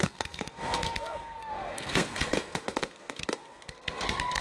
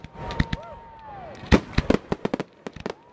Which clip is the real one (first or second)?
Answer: second